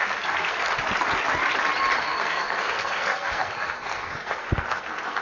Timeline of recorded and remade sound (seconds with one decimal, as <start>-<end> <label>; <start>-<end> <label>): 0.0-0.8 remade; 0.8-2.0 recorded; 2.0-5.2 remade